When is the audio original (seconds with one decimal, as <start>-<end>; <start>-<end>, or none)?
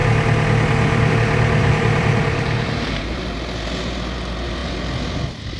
0.0-1.6; 3.2-5.6